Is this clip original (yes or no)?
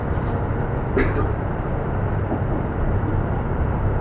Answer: yes